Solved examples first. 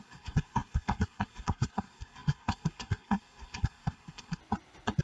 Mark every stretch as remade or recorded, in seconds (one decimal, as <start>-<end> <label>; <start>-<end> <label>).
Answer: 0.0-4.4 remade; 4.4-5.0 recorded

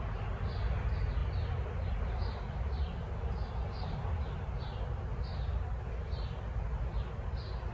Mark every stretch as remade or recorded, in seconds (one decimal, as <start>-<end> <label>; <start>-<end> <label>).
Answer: 0.0-7.7 recorded

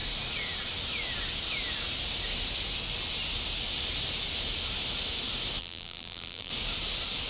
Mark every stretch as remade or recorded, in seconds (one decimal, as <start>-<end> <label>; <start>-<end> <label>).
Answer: 0.0-5.6 recorded; 5.6-6.5 remade; 6.5-7.3 recorded

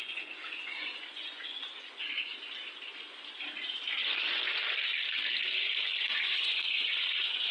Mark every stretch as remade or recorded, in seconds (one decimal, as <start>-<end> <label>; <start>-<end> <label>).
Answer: 0.0-2.3 remade; 2.3-4.0 recorded; 4.0-4.4 remade; 4.4-6.0 recorded; 6.0-7.5 remade

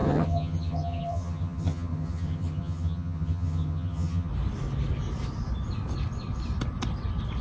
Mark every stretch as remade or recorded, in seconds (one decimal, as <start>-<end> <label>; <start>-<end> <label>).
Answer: 0.0-4.3 remade; 4.3-7.4 recorded